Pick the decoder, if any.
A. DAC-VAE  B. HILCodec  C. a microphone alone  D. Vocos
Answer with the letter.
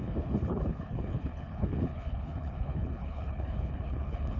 B